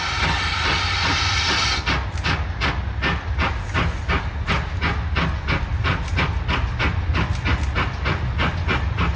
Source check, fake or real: real